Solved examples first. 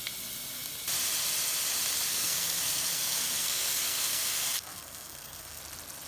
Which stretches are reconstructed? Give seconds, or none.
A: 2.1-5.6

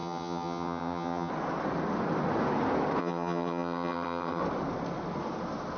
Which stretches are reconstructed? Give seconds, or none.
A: 0.0-1.3; 3.0-4.4